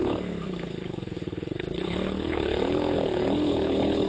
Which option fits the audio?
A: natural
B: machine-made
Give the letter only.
B